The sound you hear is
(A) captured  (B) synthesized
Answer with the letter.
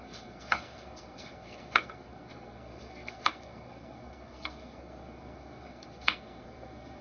B